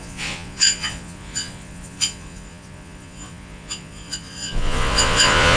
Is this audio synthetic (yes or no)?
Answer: yes